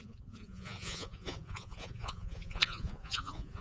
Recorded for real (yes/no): no